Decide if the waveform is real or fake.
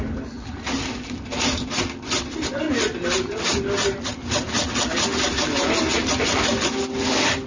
real